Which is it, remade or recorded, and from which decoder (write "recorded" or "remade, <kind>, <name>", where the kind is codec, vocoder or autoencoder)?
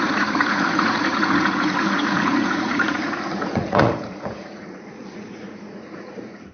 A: remade, vocoder, Vocos